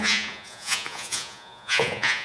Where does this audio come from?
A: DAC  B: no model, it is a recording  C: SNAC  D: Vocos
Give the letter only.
D